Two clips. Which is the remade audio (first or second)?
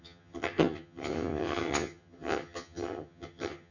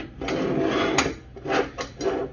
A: first